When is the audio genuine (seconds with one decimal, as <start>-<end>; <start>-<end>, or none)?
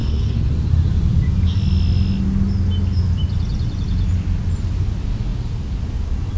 0.5-6.4